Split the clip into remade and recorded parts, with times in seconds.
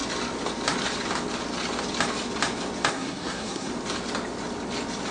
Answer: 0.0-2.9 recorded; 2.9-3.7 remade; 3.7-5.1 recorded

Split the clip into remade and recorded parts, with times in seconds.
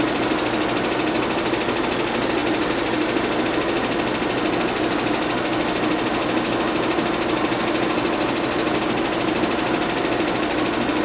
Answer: 0.0-11.0 recorded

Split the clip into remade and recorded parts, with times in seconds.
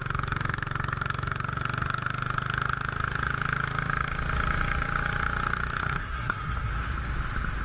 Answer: 0.0-5.8 recorded; 5.8-6.7 remade; 6.7-7.6 recorded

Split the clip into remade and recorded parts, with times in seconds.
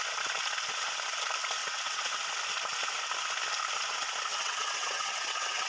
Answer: 0.0-1.6 recorded; 1.6-2.1 remade; 2.1-4.3 recorded; 4.3-5.7 remade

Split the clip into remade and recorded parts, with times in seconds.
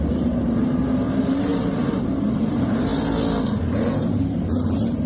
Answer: 0.0-2.9 remade; 2.9-3.9 recorded; 3.9-5.1 remade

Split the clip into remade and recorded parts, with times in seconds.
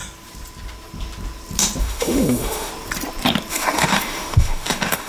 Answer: 0.0-1.8 recorded; 1.8-2.7 remade; 2.7-3.5 recorded; 3.5-5.1 remade